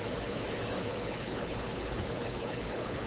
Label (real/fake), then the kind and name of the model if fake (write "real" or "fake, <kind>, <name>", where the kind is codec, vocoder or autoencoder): fake, codec, HILCodec